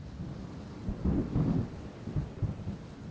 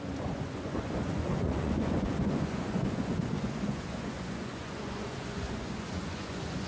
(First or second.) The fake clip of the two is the second